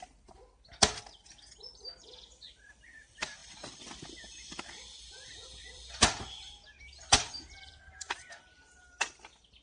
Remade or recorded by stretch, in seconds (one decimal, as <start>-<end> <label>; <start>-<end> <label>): 0.0-0.7 remade; 0.7-1.7 recorded; 1.7-3.4 remade; 3.4-4.2 recorded; 4.2-9.6 remade